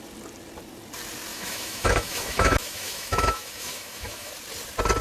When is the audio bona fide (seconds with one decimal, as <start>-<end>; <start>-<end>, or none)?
0.0-1.3; 4.3-5.0